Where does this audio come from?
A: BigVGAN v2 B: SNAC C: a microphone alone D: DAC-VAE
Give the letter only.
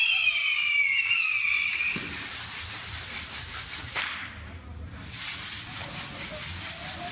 A